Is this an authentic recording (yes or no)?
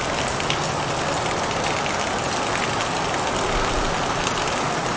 yes